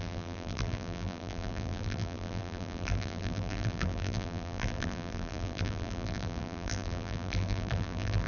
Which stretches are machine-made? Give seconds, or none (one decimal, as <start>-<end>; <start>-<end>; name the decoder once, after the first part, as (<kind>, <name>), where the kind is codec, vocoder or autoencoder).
0.0-8.3 (vocoder, BigVGAN v2)